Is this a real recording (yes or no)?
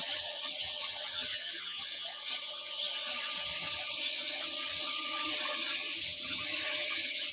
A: no